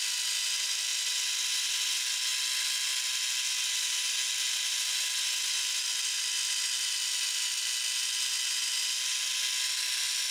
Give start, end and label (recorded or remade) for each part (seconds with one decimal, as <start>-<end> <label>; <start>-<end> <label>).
0.0-10.3 recorded